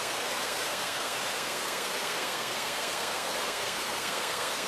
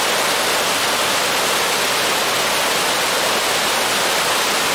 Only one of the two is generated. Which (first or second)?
first